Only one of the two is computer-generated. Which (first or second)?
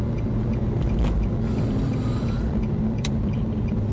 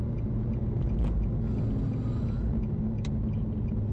first